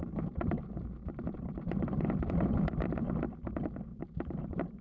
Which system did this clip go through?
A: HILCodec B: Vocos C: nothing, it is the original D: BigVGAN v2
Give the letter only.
C